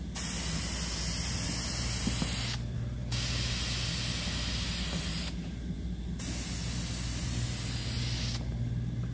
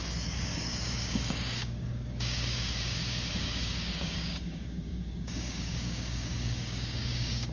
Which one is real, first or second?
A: first